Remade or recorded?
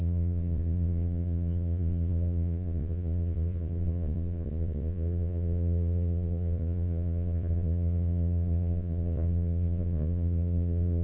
remade